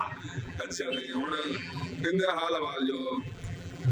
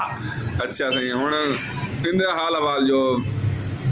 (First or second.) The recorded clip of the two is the second